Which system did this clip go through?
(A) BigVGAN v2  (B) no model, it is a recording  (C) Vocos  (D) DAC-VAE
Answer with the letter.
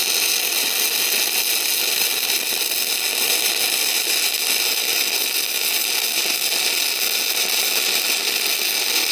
B